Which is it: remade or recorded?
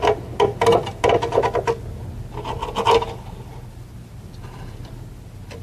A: recorded